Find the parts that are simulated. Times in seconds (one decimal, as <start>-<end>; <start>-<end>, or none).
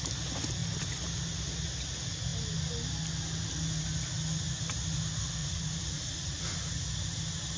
5.4-6.4